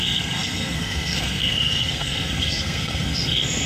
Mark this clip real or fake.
fake